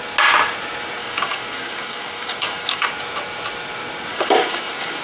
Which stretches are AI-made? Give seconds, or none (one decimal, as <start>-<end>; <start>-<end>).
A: 1.0-2.9; 4.1-5.0